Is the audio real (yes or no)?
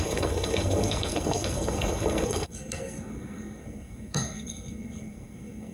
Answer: no